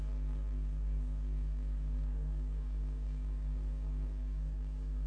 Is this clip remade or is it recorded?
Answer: remade